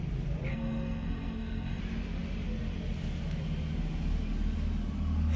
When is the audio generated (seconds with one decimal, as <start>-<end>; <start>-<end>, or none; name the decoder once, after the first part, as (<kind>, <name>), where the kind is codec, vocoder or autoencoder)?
0.5-1.8 (codec, SNAC)